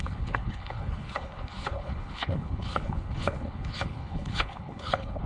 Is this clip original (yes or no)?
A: no